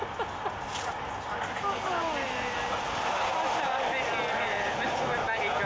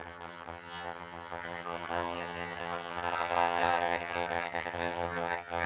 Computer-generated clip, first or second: second